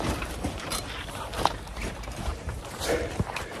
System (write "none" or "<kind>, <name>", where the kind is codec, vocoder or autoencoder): vocoder, BigVGAN v2